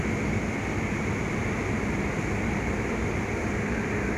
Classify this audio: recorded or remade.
recorded